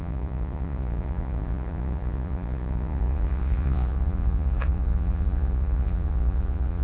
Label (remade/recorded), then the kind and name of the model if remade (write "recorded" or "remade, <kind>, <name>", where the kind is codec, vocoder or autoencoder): remade, vocoder, Vocos